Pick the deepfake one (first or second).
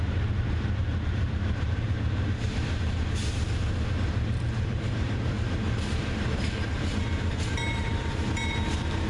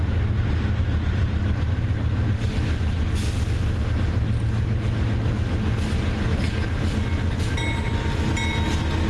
first